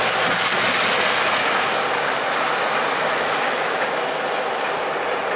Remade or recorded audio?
recorded